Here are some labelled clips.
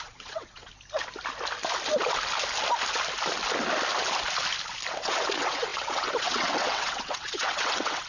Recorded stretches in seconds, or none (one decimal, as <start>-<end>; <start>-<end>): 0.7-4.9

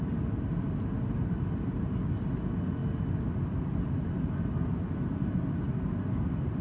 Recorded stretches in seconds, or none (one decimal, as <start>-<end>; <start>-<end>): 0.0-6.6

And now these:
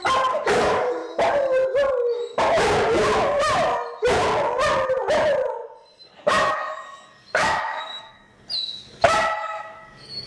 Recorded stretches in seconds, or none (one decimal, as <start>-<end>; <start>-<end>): 1.0-6.1; 8.3-8.8